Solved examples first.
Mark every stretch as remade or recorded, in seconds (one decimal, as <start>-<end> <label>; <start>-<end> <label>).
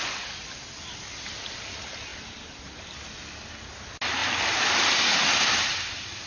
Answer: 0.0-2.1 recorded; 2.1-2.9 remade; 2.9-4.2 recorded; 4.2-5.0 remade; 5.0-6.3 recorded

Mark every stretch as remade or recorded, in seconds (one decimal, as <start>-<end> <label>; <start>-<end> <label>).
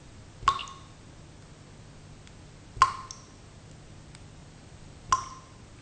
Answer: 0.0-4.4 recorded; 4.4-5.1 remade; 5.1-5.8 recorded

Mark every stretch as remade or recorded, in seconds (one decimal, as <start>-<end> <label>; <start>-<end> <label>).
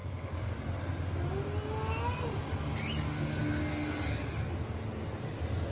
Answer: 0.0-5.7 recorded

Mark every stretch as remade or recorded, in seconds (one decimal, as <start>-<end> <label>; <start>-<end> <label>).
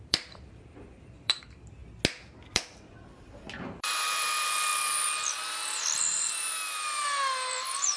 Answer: 0.0-1.8 remade; 1.8-2.3 recorded; 2.3-4.7 remade; 4.7-7.5 recorded; 7.5-8.0 remade